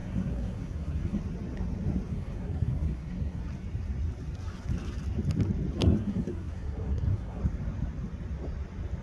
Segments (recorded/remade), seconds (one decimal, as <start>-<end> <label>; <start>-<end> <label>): 0.0-1.2 remade; 1.2-2.1 recorded; 2.1-3.4 remade; 3.4-5.8 recorded; 5.8-7.4 remade; 7.4-9.0 recorded